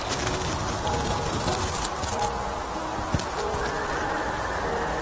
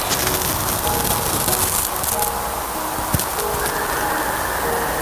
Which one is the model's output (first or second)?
first